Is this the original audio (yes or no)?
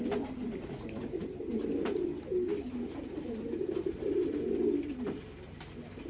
yes